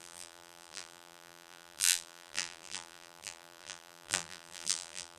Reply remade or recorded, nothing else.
remade